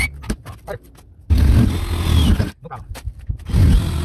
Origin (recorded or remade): recorded